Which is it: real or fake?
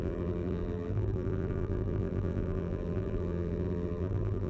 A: fake